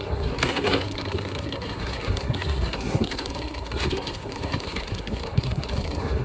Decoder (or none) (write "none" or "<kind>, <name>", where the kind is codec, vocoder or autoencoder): codec, SNAC